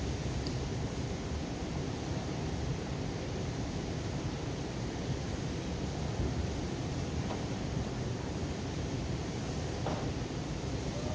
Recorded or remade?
remade